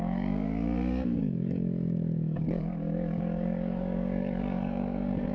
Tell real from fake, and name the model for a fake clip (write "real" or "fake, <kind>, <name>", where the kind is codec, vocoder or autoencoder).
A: fake, codec, DAC